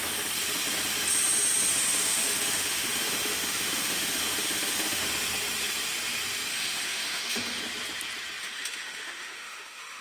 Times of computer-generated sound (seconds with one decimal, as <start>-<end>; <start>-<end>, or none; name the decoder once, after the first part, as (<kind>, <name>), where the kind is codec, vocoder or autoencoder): 1.7-5.0 (autoencoder, DAC-VAE); 6.5-7.6; 8.4-10.0